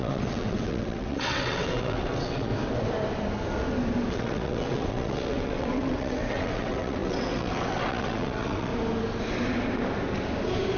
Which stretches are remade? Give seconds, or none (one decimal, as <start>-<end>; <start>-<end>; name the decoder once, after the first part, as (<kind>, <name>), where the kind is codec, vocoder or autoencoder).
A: 0.0-2.5 (vocoder, WaveNeXt); 4.1-8.7